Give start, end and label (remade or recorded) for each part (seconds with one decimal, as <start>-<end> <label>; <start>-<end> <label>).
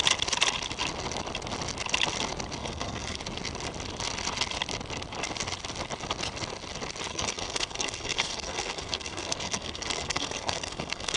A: 0.0-2.6 recorded; 2.6-3.2 remade; 3.2-7.1 recorded; 7.1-11.2 remade